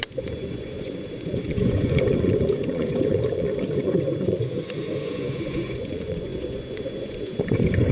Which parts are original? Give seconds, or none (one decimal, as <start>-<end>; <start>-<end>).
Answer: none